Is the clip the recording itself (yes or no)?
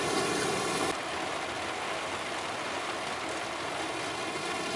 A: yes